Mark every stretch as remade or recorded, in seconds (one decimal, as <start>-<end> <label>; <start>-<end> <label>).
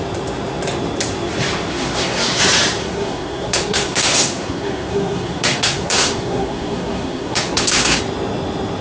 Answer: 0.0-1.7 recorded; 1.7-2.4 remade; 2.4-2.8 recorded; 2.8-8.0 remade; 8.0-8.8 recorded